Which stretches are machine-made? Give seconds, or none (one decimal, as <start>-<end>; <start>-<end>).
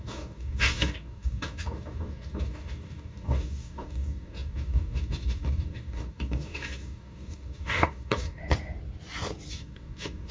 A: 0.0-8.4; 9.5-10.3